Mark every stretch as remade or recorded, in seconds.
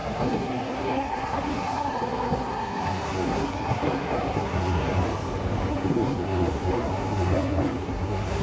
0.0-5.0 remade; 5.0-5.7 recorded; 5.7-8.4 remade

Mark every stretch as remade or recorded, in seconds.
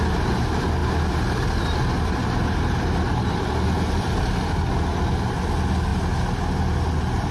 0.0-7.3 recorded